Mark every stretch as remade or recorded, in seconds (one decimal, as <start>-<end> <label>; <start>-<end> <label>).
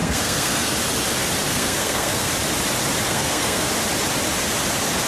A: 0.0-0.7 remade; 0.7-1.5 recorded; 1.5-2.3 remade; 2.3-3.1 recorded; 3.1-3.7 remade; 3.7-5.1 recorded